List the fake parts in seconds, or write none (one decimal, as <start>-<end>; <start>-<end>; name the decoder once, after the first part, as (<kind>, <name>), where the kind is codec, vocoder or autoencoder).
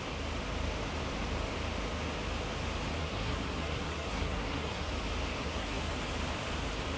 3.0-4.9 (codec, SNAC); 5.4-5.9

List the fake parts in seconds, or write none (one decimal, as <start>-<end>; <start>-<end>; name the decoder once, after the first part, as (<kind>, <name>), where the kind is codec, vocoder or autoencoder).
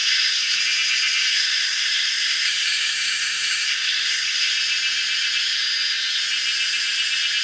0.0-0.6 (codec, SNAC); 1.3-4.5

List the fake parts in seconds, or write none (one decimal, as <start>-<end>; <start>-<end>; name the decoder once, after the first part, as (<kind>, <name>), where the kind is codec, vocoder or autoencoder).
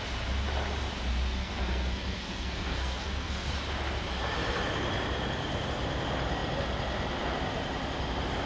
1.4-3.5 (codec, SNAC)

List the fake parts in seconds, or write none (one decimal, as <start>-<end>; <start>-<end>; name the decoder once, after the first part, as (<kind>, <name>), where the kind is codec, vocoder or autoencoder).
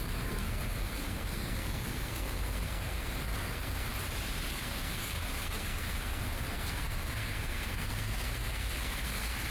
0.0-3.9 (codec, SNAC); 4.5-9.5